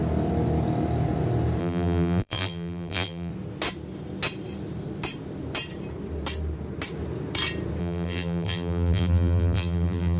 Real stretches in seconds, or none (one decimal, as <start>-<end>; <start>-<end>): 0.0-1.6; 3.3-7.8

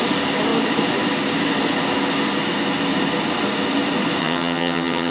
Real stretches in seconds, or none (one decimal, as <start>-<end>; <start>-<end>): 0.0-4.2

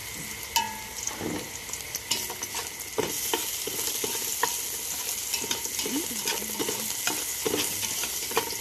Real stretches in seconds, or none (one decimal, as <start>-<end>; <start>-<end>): 0.0-8.6